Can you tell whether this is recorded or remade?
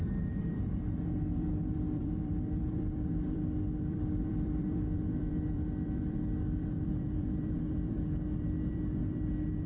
remade